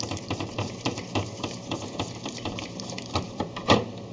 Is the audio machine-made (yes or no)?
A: yes